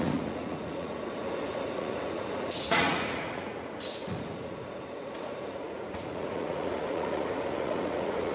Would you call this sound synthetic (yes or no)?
yes